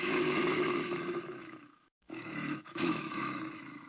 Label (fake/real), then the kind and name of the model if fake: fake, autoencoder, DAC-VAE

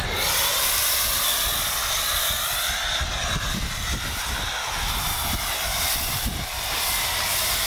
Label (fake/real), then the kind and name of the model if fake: real